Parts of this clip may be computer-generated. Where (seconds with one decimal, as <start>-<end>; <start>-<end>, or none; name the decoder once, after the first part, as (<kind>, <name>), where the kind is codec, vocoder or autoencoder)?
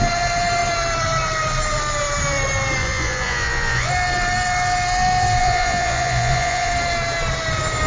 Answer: 2.8-3.9 (vocoder, Vocos); 5.4-6.7